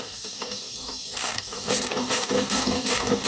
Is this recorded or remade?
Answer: remade